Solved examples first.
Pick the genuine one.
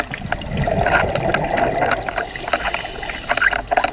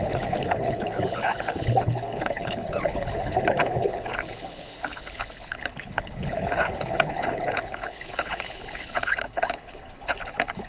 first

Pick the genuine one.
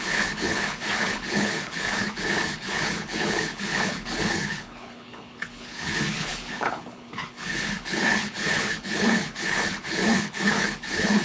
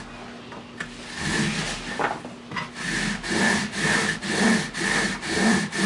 second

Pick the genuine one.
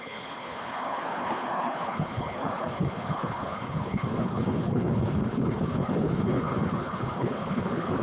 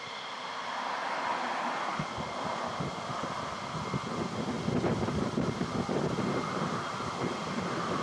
second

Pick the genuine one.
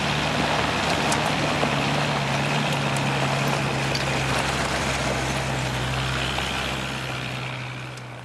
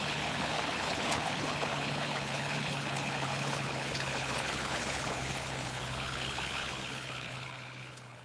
first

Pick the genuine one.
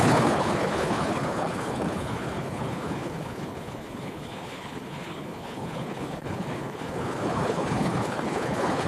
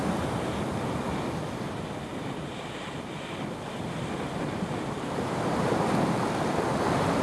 second